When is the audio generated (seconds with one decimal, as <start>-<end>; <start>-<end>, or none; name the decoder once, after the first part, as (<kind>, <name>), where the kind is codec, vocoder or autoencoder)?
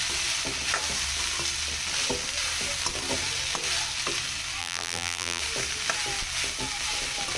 4.6-5.4 (vocoder, BigVGAN v2)